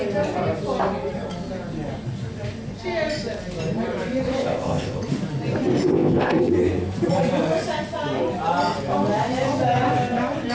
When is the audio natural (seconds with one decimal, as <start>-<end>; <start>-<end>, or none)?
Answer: 0.0-4.4; 5.0-5.9; 6.5-10.5